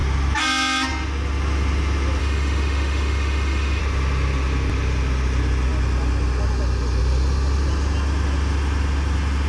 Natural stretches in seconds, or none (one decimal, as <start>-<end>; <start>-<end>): 0.0-2.2; 3.8-9.5